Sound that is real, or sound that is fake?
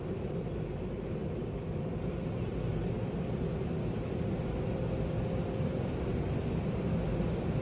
real